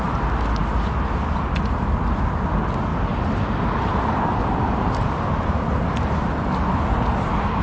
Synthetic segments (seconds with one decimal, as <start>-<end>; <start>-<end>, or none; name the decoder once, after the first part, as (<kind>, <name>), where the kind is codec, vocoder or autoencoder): 2.9-5.6 (vocoder, BigVGAN v2)